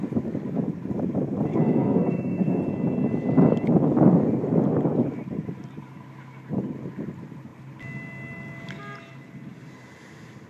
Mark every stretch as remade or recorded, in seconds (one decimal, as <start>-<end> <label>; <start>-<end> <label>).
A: 0.0-1.5 recorded; 1.5-2.6 remade; 2.6-10.5 recorded